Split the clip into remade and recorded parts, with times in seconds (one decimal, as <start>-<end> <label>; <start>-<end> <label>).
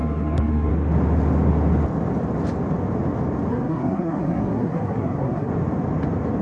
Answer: 0.0-0.7 remade; 0.7-3.5 recorded; 3.5-5.5 remade; 5.5-6.4 recorded